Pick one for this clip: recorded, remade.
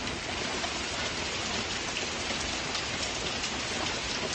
recorded